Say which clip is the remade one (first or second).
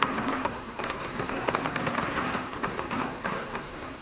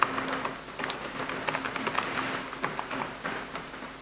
first